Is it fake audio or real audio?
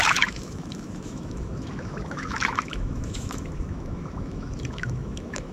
fake